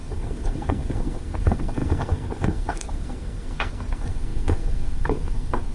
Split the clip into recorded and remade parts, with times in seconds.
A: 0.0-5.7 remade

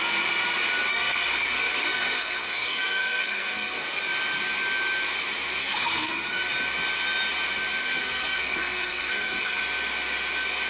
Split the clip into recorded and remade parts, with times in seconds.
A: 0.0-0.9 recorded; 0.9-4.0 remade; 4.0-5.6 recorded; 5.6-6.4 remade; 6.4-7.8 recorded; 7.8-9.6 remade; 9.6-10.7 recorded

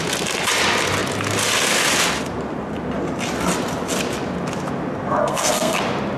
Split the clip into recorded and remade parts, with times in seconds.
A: 0.0-5.2 recorded; 5.2-5.8 remade; 5.8-6.2 recorded

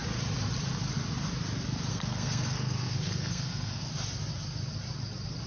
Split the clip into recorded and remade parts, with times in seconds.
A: 0.0-1.9 recorded; 1.9-3.9 remade; 3.9-5.5 recorded